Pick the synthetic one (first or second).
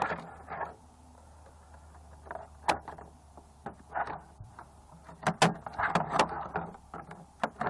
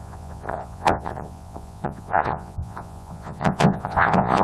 second